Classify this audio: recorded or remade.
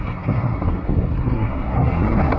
remade